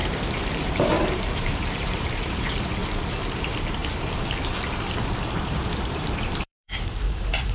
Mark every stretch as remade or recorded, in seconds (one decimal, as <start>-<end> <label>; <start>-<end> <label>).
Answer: 0.0-2.8 remade; 2.8-3.4 recorded; 3.4-3.8 remade; 3.8-5.2 recorded; 5.2-7.5 remade